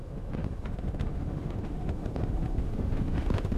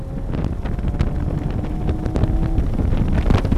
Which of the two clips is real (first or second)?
second